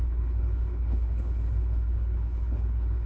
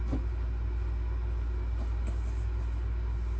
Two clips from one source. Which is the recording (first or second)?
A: second